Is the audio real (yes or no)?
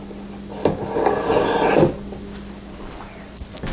yes